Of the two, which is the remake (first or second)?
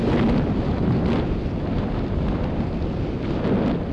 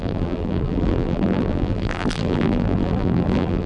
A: second